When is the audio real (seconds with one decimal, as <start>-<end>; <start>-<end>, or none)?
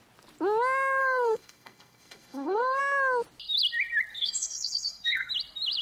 0.0-1.0; 2.8-4.1; 5.3-5.8